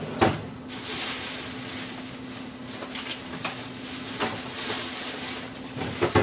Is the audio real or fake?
real